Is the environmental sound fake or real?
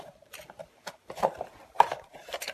fake